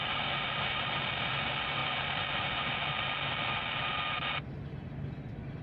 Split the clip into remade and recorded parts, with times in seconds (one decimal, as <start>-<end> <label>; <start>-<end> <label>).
0.0-5.6 recorded